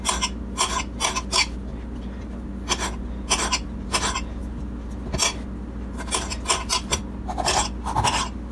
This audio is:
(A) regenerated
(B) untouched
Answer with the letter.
B